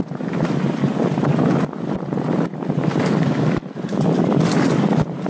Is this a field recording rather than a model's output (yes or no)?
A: yes